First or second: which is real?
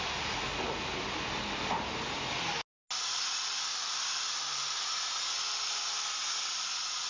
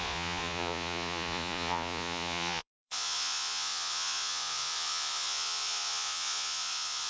first